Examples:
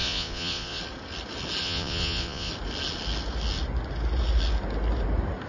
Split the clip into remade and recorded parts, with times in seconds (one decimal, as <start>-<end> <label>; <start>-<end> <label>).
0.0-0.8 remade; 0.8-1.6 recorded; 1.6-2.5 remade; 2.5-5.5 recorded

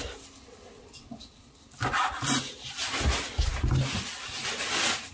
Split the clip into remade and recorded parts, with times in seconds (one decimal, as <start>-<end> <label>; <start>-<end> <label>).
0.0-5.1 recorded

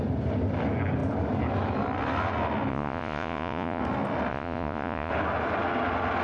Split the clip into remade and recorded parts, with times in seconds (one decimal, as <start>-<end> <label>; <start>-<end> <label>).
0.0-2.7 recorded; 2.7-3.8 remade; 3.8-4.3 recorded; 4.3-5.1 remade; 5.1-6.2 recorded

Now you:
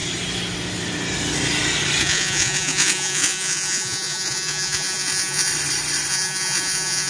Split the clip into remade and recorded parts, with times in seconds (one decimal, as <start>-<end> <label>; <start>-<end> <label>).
0.0-2.0 recorded; 2.0-5.5 remade; 5.5-6.1 recorded; 6.1-7.1 remade